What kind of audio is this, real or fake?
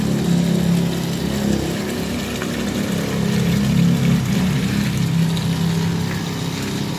real